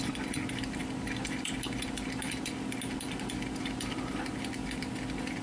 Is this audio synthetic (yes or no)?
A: yes